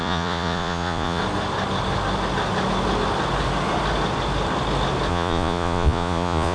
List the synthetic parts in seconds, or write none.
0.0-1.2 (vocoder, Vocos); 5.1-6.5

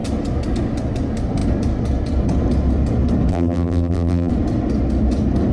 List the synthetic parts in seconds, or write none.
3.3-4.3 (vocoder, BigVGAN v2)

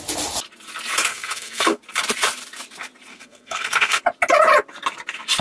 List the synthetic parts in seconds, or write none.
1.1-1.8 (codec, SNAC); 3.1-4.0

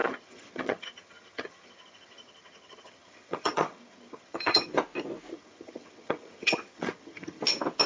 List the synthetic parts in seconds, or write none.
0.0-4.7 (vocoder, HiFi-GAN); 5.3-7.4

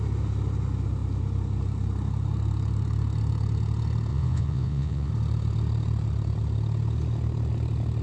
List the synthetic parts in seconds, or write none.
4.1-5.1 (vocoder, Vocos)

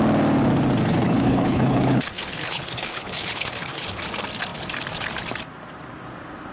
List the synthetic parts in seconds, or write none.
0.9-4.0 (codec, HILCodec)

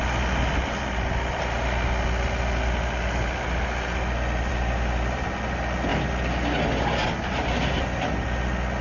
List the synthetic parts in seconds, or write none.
none

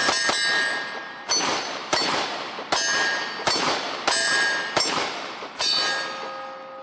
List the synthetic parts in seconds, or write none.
0.0-1.3 (vocoder, BigVGAN v2); 2.9-3.7; 4.2-5.6